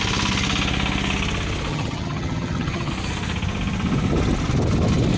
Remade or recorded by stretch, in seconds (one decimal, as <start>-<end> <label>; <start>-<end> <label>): 0.0-1.7 recorded; 1.7-2.9 remade; 2.9-5.2 recorded